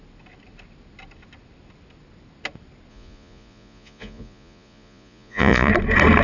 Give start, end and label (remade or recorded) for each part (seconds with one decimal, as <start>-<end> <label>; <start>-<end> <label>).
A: 0.0-2.9 recorded; 2.9-5.7 remade; 5.7-6.2 recorded